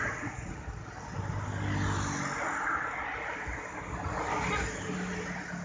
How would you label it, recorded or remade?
recorded